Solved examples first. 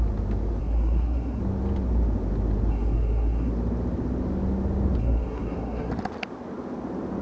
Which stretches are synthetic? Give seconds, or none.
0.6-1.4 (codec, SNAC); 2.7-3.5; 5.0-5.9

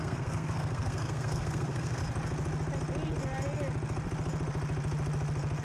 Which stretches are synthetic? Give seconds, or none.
0.0-2.0 (codec, SNAC)

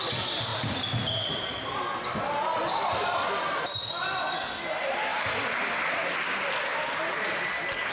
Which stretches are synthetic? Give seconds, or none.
none

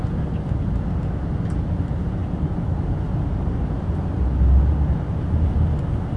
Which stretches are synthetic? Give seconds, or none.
none

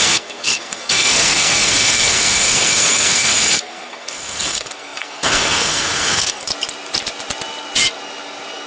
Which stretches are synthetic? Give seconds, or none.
0.0-6.5 (codec, SNAC)